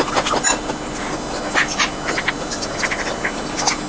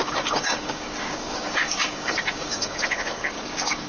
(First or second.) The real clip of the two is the first